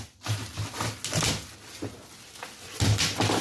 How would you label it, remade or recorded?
recorded